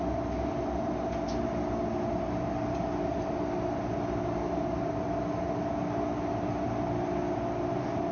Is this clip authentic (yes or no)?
yes